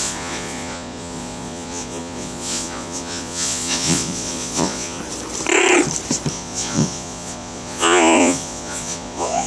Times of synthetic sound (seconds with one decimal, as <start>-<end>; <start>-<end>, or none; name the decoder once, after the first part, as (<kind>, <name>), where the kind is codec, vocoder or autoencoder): 0.0-5.0 (vocoder, Vocos); 6.3-9.5